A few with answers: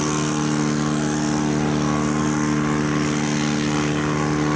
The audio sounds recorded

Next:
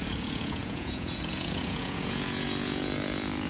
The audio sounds remade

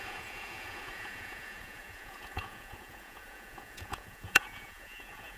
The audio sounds remade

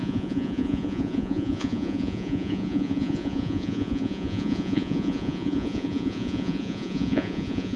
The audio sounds remade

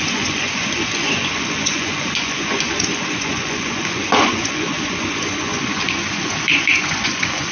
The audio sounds remade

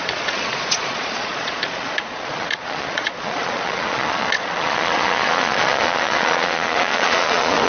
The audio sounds remade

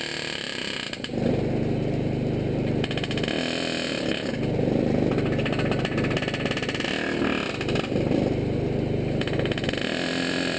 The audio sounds recorded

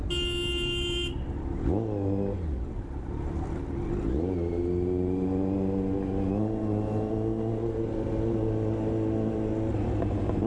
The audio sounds recorded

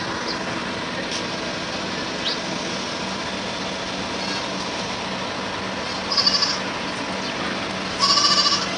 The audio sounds recorded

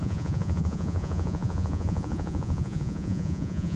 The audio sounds remade